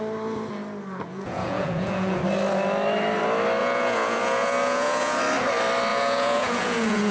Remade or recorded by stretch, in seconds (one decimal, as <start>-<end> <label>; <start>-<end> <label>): 0.0-1.1 recorded; 1.1-2.2 remade; 2.2-3.6 recorded; 3.6-5.2 remade; 5.2-5.9 recorded; 5.9-7.1 remade